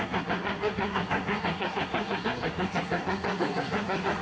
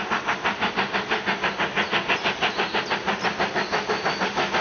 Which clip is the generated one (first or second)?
first